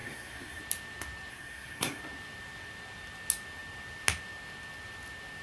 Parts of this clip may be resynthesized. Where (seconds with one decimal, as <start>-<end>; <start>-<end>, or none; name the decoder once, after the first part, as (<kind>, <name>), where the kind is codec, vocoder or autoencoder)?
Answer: 0.0-0.6 (codec, SNAC); 1.3-2.0